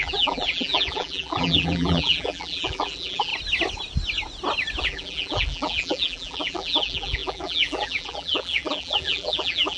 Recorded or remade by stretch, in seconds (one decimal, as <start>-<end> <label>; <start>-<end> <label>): 0.0-3.3 remade; 3.3-4.8 recorded; 4.8-9.8 remade

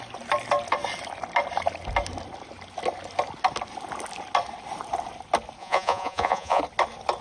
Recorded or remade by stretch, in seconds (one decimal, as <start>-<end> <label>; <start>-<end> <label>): 0.0-5.6 recorded; 5.6-6.6 remade; 6.6-7.2 recorded

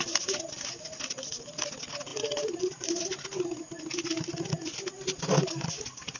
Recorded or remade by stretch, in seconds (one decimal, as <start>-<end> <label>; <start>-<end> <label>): 0.0-2.1 recorded; 2.1-2.9 remade; 2.9-6.2 recorded

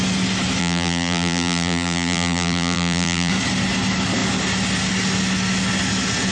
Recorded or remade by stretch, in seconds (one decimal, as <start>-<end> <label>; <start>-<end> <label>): 0.0-0.6 recorded; 0.6-3.3 remade; 3.3-6.3 recorded

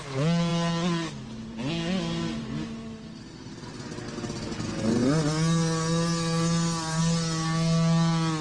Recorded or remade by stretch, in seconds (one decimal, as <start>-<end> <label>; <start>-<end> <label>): 0.0-8.4 recorded